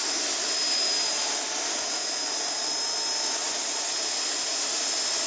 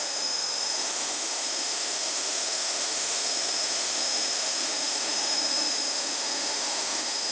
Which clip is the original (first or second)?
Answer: first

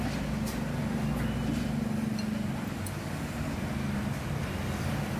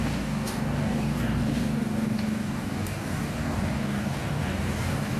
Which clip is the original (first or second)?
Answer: first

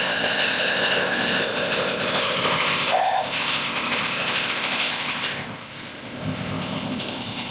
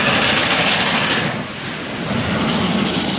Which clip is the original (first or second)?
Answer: second